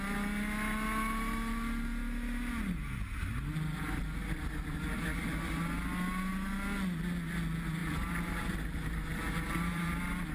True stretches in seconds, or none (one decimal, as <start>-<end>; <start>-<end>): 0.0-7.8; 9.9-10.3